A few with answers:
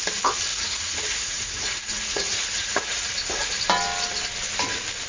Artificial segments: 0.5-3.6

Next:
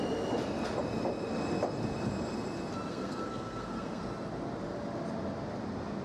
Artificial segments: 2.9-4.0

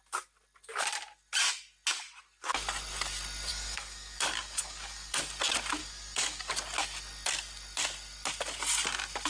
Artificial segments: 3.5-5.2; 5.8-6.5

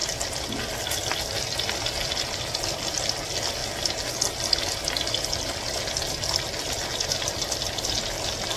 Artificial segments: none

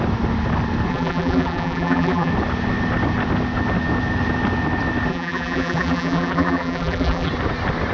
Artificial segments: 0.9-2.3; 5.1-7.3

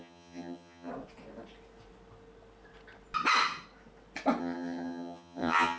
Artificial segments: 0.0-0.9; 4.4-5.8

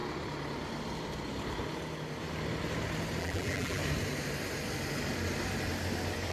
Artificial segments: 3.2-3.8

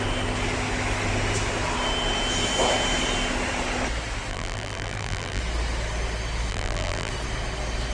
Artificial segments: 4.3-5.4; 6.5-7.1